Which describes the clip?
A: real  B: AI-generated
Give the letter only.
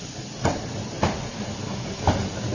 A